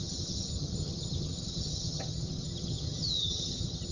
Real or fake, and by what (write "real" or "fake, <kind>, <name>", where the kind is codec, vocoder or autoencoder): fake, vocoder, HiFi-GAN